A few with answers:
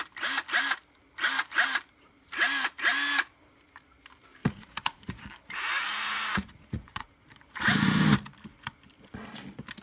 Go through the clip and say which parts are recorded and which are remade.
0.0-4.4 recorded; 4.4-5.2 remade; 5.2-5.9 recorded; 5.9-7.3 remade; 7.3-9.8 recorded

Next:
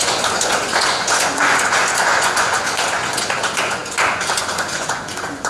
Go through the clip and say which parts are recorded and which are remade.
0.0-5.5 remade

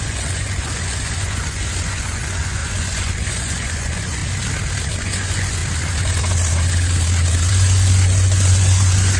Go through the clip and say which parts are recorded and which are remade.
0.0-4.2 remade; 4.2-5.0 recorded; 5.0-5.6 remade; 5.6-7.5 recorded; 7.5-9.2 remade

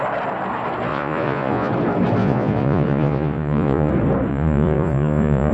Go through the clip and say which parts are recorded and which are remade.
0.0-0.9 recorded; 0.9-1.7 remade; 1.7-2.2 recorded; 2.2-3.9 remade; 3.9-4.3 recorded; 4.3-5.5 remade